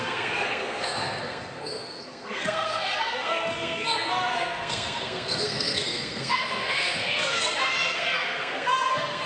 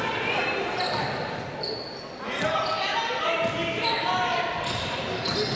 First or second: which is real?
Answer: second